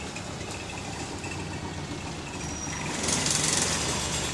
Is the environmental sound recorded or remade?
recorded